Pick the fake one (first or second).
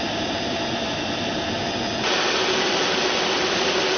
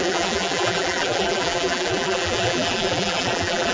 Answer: second